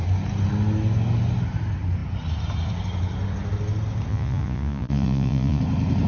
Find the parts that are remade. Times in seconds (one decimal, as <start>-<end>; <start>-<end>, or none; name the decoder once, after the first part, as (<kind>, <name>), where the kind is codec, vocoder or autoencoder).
4.1-5.6 (vocoder, Vocos)